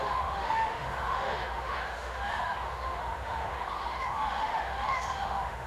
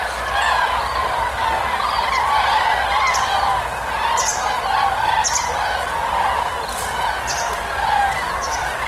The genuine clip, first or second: second